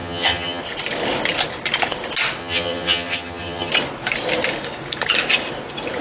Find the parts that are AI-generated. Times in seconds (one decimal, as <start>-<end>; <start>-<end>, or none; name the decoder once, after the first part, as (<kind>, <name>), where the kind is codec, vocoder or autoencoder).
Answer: 0.0-0.6 (vocoder, HiFi-GAN); 2.4-3.7